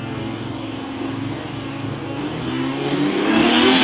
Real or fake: fake